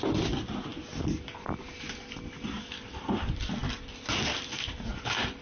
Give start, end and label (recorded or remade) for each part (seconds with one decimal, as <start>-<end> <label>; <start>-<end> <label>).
0.0-5.4 recorded